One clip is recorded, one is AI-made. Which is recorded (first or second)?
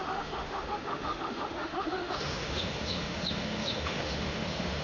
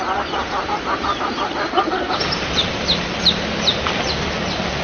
second